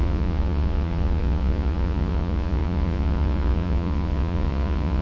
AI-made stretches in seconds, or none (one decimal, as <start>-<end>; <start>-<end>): 0.0-5.0